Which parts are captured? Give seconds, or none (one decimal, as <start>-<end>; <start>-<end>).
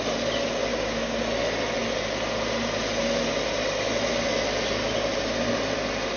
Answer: 0.0-0.7; 1.2-6.2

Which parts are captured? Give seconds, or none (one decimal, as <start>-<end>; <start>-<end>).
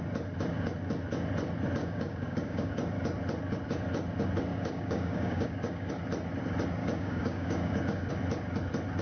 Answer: 0.0-1.8; 2.7-4.5; 5.9-6.8; 8.1-9.0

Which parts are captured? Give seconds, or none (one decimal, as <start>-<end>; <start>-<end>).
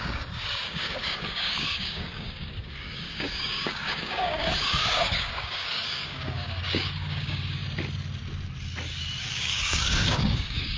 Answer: 7.6-9.2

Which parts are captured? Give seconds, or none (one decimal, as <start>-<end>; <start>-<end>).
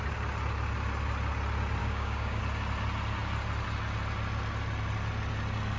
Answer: 0.0-1.8; 2.4-5.8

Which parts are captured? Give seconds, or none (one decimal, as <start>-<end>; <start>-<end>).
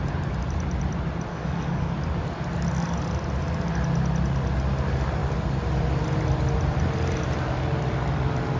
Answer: 0.0-1.3; 1.9-8.6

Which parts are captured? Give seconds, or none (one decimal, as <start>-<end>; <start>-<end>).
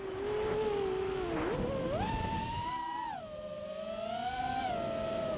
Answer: 0.0-5.4